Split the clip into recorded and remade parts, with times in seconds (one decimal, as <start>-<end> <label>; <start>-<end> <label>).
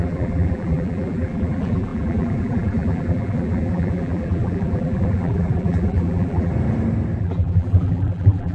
0.0-6.5 remade; 6.5-7.2 recorded; 7.2-8.5 remade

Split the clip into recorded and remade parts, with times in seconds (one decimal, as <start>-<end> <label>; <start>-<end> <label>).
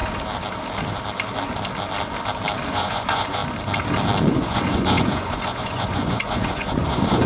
0.0-2.7 recorded; 2.7-3.4 remade; 3.4-4.2 recorded; 4.2-7.3 remade